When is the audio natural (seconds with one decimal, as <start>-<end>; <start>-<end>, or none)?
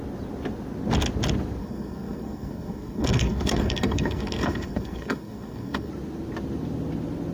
0.0-1.6; 5.9-7.3